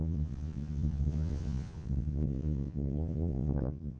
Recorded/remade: remade